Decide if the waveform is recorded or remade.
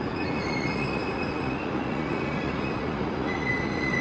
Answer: remade